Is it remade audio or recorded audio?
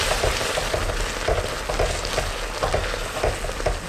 recorded